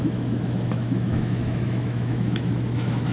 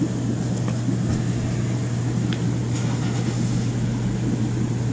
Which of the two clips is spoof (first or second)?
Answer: first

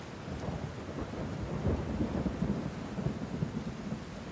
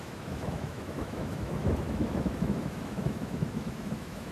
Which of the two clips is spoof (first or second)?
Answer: second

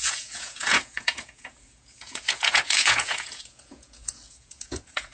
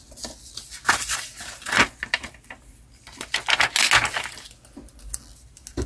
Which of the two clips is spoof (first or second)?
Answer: first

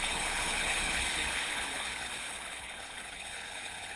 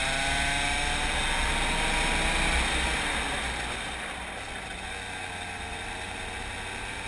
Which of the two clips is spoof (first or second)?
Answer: first